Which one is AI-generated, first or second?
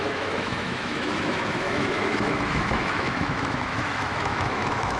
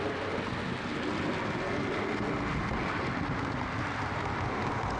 first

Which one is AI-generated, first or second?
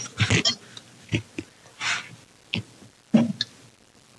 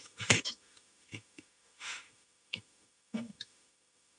second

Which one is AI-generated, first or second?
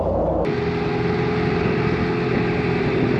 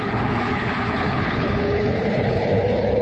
second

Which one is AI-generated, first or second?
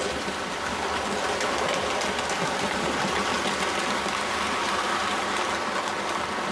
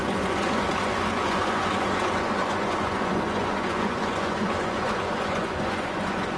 second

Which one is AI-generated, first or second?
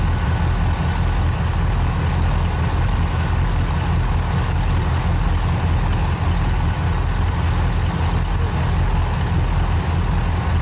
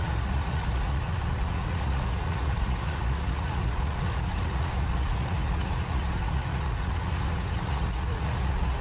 second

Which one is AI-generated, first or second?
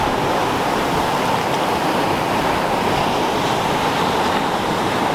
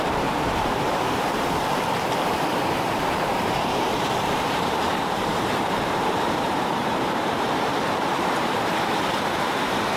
second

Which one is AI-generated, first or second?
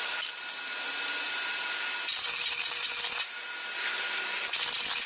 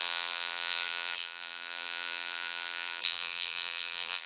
second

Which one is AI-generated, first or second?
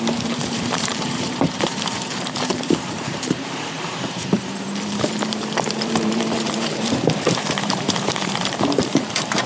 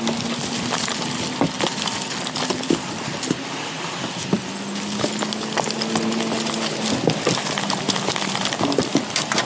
first